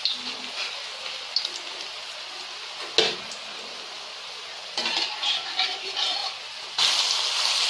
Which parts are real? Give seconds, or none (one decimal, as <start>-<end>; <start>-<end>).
0.0-7.7